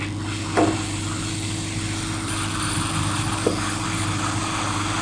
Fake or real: real